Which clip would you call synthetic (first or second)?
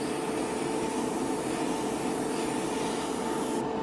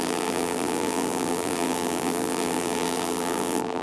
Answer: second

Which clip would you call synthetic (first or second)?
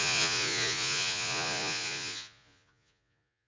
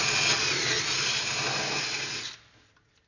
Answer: first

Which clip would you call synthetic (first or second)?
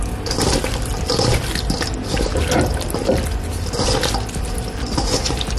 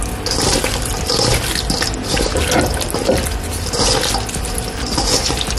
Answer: first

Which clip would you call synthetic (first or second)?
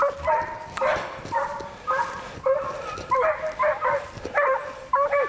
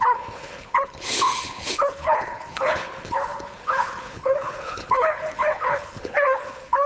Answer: second